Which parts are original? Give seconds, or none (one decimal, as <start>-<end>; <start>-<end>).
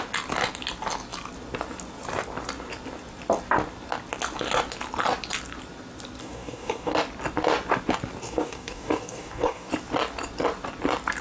0.0-6.2; 6.9-8.2; 9.7-11.2